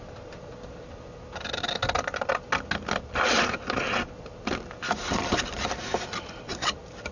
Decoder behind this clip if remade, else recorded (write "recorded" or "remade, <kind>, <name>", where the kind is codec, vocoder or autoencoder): recorded